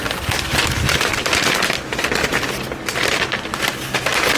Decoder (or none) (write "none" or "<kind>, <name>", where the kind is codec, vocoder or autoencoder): none